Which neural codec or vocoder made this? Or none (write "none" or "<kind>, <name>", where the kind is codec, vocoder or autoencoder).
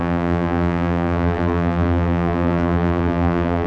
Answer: vocoder, BigVGAN v2